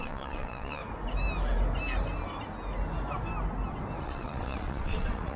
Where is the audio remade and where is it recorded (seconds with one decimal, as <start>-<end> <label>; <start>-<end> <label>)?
0.0-0.8 remade; 0.8-4.0 recorded; 4.0-5.4 remade